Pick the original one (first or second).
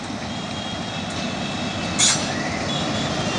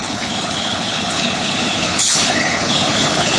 first